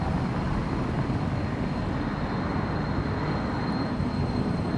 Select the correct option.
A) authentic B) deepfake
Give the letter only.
A